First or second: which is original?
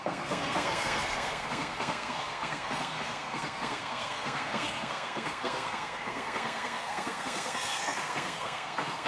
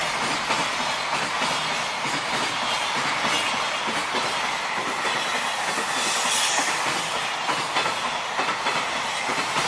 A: second